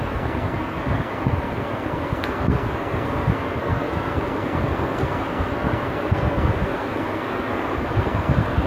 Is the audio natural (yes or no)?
no